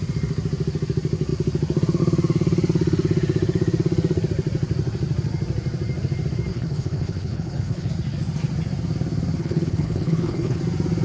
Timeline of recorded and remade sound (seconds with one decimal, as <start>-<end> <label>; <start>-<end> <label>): 0.0-6.5 recorded; 6.5-7.9 remade; 7.9-9.4 recorded; 9.4-10.6 remade; 10.6-11.0 recorded